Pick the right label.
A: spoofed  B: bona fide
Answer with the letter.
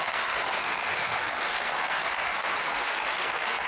A